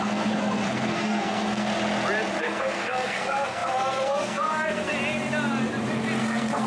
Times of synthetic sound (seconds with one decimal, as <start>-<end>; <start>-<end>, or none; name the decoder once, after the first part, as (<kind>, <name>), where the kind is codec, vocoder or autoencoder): 0.0-1.7 (codec, SNAC); 2.4-4.9; 6.2-6.7